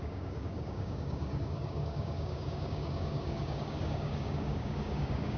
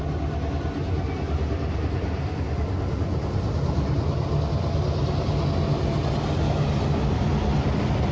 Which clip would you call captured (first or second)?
second